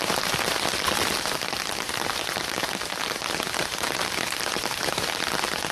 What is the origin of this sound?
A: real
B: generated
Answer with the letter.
B